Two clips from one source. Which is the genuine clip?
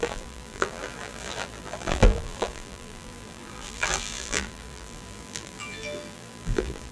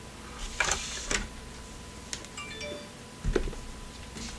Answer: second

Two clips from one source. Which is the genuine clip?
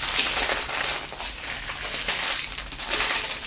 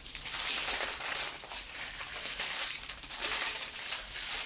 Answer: first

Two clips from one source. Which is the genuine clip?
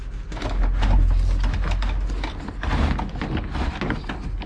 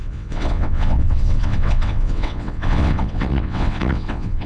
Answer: first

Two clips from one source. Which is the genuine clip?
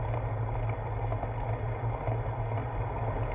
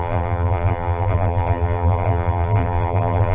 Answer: first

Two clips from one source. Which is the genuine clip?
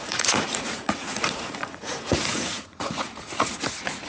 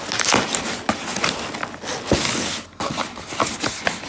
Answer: second